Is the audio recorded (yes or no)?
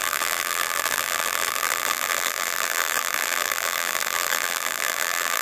no